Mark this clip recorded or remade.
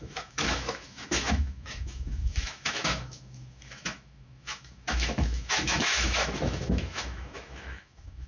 remade